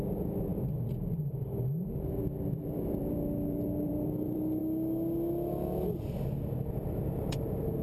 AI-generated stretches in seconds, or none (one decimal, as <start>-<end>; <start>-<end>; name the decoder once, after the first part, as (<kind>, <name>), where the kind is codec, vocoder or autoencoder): 0.0-0.5 (vocoder, BigVGAN v2); 2.5-4.6; 6.7-7.8